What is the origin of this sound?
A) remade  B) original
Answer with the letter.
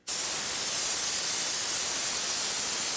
B